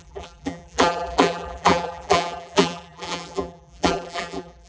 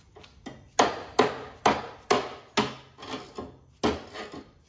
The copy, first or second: first